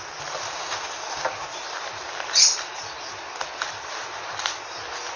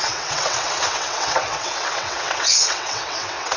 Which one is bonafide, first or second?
first